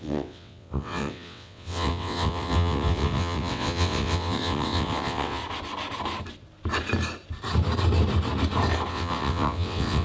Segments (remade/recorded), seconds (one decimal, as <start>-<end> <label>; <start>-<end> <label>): 0.0-5.4 remade; 5.4-8.9 recorded; 8.9-10.0 remade